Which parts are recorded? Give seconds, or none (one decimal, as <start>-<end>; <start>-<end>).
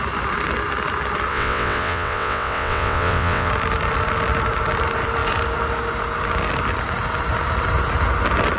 0.0-1.3; 3.5-8.6